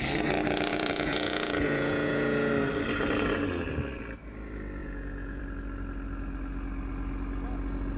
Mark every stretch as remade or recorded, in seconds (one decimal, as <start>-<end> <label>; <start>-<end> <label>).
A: 0.0-0.7 recorded; 0.7-2.5 remade; 2.5-4.8 recorded; 4.8-5.4 remade; 5.4-8.0 recorded

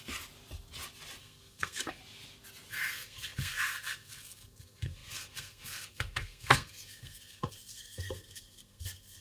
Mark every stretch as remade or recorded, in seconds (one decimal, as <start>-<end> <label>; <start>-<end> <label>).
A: 0.0-1.2 recorded; 1.2-2.0 remade; 2.0-2.7 recorded; 2.7-9.2 remade